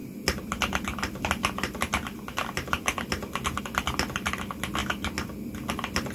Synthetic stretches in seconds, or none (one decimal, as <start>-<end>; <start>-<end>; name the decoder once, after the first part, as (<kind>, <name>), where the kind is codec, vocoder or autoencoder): none